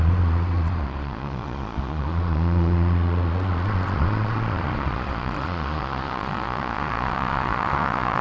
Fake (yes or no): yes